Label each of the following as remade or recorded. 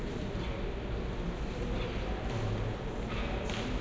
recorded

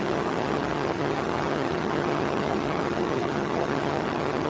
remade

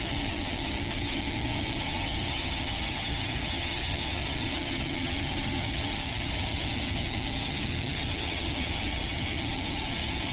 remade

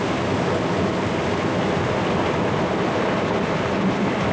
recorded